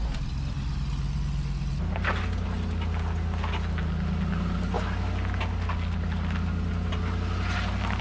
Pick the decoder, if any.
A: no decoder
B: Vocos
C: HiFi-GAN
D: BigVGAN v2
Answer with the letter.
A